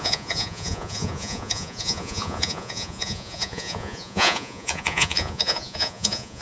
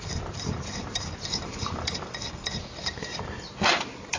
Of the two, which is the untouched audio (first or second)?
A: second